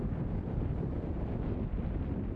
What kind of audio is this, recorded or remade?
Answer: recorded